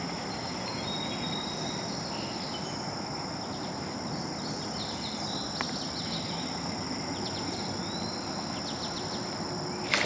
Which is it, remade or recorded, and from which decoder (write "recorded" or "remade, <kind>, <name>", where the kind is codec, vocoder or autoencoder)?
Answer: recorded